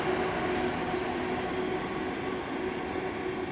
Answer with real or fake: real